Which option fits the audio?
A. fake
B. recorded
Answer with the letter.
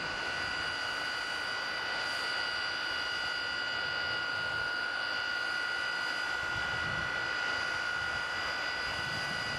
B